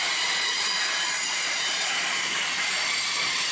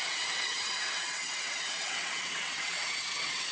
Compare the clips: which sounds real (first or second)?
first